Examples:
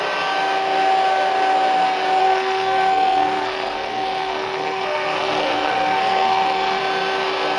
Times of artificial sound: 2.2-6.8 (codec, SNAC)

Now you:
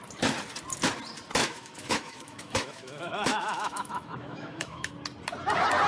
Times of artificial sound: 1.4-4.9 (autoencoder, DAC-VAE)

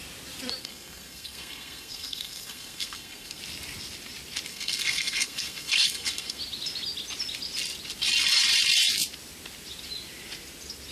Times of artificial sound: 0.6-3.4 (codec, SNAC); 4.5-6.4

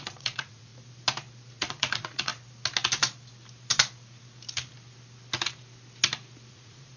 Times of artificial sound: 0.0-0.7 (vocoder, Vocos); 1.6-2.3; 6.5-7.0

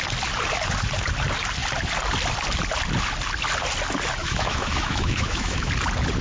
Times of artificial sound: 4.2-5.7 (autoencoder, DAC-VAE)

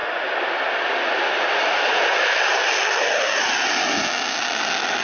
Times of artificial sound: none

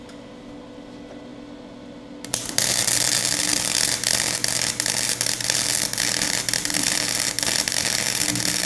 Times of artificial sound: none